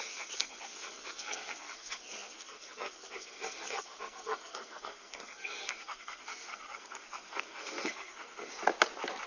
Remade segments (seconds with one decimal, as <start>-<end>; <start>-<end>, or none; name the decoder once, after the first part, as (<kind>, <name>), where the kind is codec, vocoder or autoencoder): 0.0-8.5 (codec, SNAC)